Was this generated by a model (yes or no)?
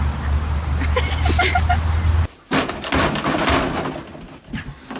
no